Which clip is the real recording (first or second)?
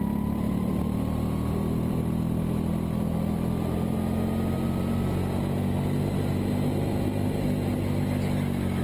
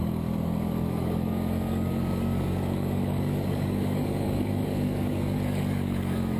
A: first